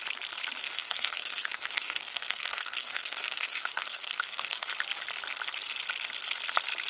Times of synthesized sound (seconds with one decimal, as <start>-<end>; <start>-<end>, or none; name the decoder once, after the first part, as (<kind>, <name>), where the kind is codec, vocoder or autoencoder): 0.6-4.7 (codec, SNAC)